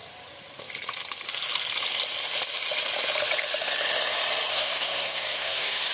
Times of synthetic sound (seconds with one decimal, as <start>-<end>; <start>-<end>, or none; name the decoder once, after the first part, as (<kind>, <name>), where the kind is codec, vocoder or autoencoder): 4.5-5.9 (codec, SNAC)